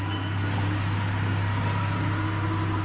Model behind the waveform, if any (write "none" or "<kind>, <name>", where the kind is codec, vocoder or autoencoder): none